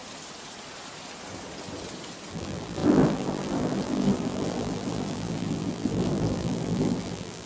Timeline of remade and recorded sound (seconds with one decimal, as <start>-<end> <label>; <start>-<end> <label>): 0.0-2.3 recorded; 2.3-7.5 remade